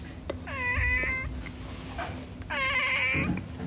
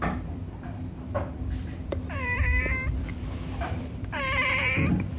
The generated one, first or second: second